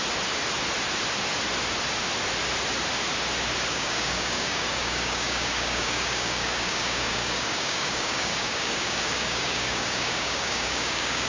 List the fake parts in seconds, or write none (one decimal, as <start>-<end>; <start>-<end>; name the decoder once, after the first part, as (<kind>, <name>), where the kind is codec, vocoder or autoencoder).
3.7-11.3 (codec, DAC)